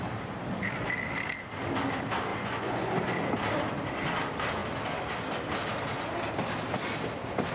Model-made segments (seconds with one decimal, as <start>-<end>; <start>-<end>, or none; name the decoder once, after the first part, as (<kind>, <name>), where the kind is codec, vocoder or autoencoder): 2.3-2.9 (vocoder, Vocos)